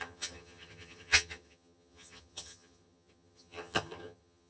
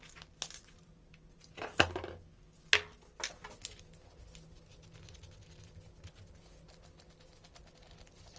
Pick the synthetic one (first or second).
first